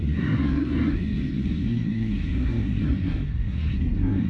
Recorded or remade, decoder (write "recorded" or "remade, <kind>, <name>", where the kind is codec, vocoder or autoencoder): remade, codec, SNAC